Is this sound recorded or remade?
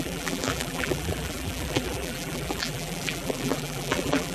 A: remade